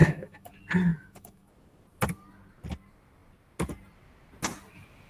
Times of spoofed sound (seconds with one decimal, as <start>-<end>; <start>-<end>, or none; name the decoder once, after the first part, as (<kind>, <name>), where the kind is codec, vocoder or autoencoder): 0.0-0.5 (autoencoder, DAC-VAE); 0.9-1.5